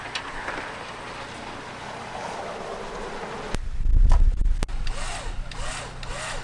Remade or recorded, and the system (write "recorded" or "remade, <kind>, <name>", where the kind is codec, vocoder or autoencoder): recorded